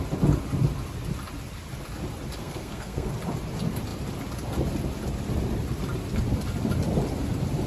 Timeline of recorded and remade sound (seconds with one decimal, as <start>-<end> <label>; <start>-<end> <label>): 0.0-2.4 recorded; 2.4-3.1 remade; 3.1-7.7 recorded